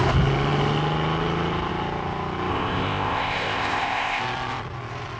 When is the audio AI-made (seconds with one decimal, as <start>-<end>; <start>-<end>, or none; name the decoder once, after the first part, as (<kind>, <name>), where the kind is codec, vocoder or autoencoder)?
2.5-4.2 (codec, ZipCodec)